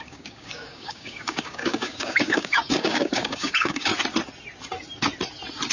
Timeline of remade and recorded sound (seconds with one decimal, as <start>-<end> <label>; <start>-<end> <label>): 0.0-3.9 remade; 3.9-5.7 recorded